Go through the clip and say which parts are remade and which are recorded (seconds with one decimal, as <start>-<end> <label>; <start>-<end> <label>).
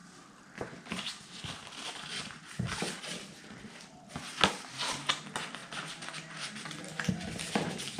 0.0-8.0 recorded